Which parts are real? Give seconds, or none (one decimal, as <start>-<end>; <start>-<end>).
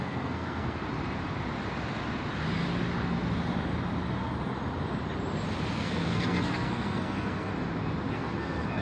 0.8-5.7; 7.5-8.1